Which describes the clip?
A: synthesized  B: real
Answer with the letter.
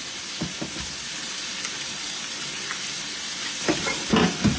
B